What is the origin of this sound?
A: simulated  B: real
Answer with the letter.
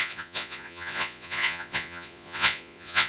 A